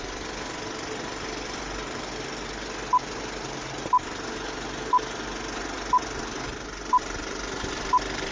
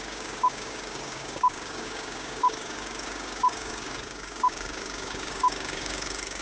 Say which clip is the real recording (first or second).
first